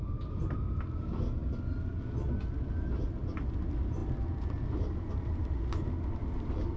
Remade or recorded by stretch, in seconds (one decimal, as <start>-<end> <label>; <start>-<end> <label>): 0.0-6.8 recorded

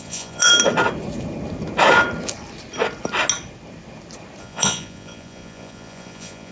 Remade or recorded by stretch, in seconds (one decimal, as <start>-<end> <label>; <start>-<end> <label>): 0.0-0.5 remade; 0.5-4.4 recorded; 4.4-6.5 remade

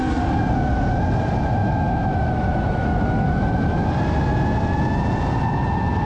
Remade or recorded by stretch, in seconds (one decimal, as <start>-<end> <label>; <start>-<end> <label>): 0.0-1.6 recorded; 1.6-3.9 remade; 3.9-6.1 recorded

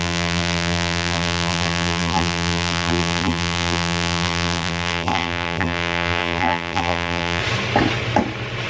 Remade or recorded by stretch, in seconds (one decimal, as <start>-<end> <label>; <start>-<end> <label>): 0.0-7.4 remade; 7.4-8.7 recorded

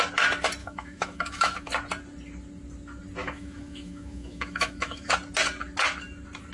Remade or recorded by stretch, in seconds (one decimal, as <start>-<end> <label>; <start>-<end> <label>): 0.0-0.6 recorded; 0.6-1.7 remade; 1.7-3.2 recorded; 3.2-5.1 remade; 5.1-6.5 recorded

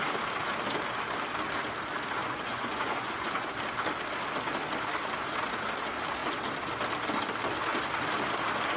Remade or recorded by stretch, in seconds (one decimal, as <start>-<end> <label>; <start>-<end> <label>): 0.0-2.2 recorded; 2.2-3.5 remade; 3.5-8.8 recorded

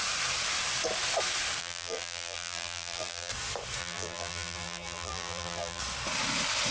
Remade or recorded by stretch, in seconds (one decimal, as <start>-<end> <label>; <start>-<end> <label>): 0.0-1.6 recorded; 1.6-3.3 remade; 3.3-3.8 recorded; 3.8-5.8 remade; 5.8-6.7 recorded

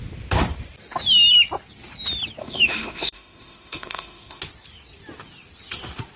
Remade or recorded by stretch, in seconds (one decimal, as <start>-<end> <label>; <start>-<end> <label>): 0.0-2.4 recorded; 2.4-4.4 remade; 4.4-6.2 recorded